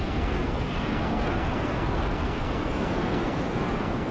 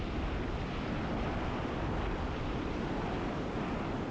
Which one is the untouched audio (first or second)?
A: second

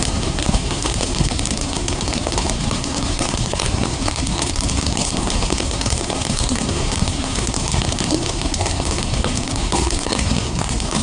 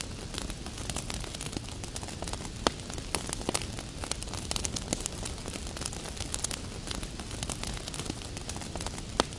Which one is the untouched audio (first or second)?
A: second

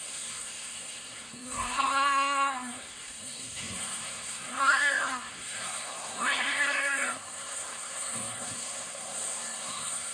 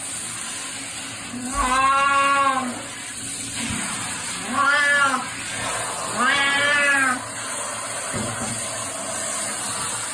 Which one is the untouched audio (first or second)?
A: second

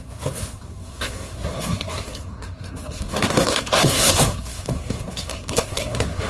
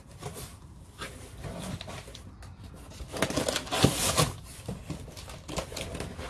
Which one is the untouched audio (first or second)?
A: second